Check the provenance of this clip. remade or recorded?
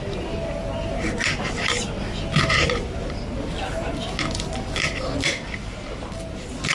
recorded